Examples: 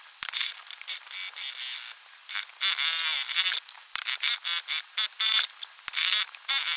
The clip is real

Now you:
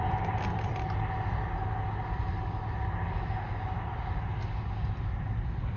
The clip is real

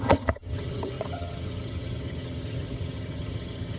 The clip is fake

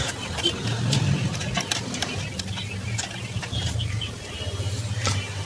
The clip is real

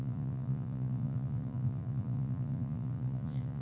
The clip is fake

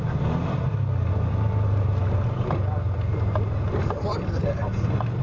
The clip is real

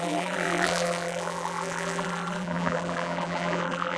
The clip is fake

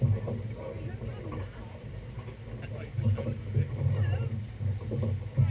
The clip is real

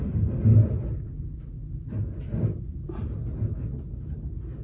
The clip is real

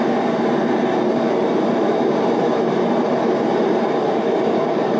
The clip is fake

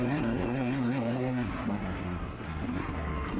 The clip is fake